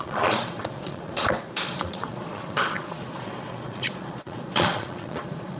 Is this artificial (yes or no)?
yes